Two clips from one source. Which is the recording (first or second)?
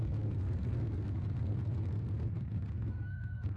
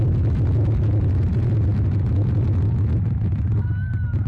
second